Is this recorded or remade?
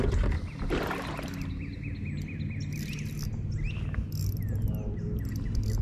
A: recorded